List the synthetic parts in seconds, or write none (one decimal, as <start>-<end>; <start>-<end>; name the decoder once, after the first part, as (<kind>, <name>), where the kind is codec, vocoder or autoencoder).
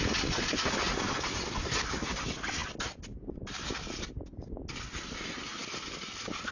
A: none